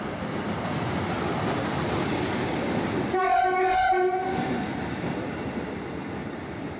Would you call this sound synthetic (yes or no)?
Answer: no